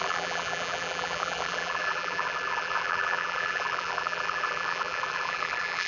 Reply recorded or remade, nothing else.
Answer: remade